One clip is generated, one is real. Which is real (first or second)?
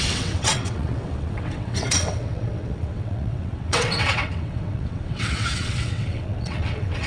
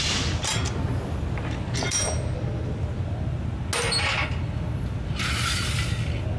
second